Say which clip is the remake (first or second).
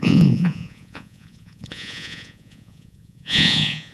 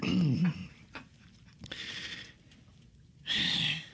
first